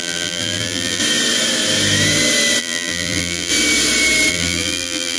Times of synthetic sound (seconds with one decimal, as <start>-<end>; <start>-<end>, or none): 0.0-1.0; 2.6-3.5; 4.3-5.2